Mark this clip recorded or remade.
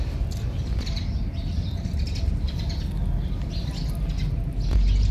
recorded